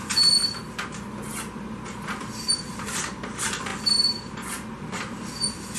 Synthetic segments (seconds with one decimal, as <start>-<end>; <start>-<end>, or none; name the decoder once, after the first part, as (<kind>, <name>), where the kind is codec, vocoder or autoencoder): none